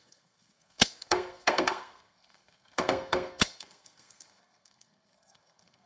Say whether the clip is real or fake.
fake